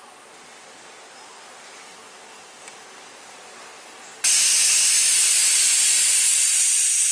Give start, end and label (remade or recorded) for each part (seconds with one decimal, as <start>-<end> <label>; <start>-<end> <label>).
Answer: 0.0-5.2 recorded; 5.2-6.6 remade; 6.6-7.1 recorded